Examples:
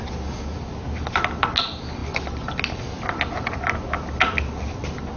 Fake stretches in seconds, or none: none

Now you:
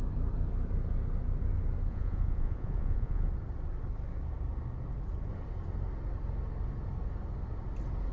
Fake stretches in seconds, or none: 1.9-3.3 (vocoder, Vocos)

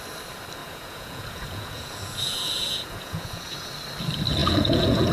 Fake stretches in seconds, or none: 0.6-3.7 (vocoder, Vocos); 4.4-5.1

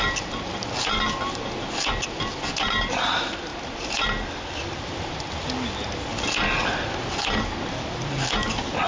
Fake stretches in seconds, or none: none